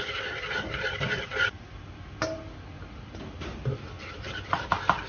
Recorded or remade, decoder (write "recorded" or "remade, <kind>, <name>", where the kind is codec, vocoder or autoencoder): recorded